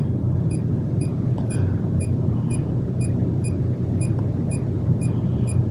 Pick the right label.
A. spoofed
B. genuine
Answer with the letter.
A